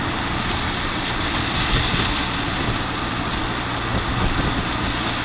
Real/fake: real